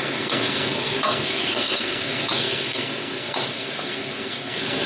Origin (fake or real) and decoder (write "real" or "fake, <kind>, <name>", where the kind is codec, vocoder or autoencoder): fake, codec, SNAC